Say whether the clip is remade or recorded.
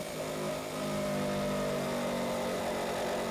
recorded